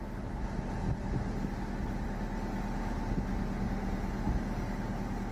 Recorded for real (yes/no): yes